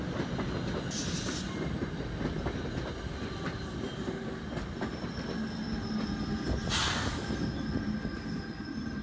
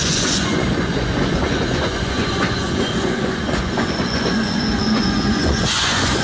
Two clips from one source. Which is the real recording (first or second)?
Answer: first